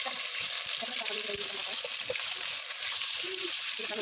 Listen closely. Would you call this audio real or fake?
real